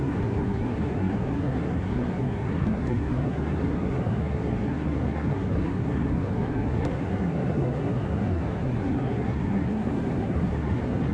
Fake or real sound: fake